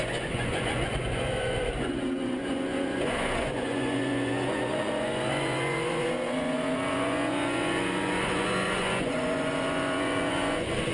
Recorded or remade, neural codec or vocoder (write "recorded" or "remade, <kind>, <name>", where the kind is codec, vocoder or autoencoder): remade, vocoder, Vocos